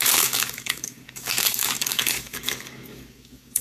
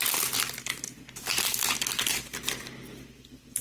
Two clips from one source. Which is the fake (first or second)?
first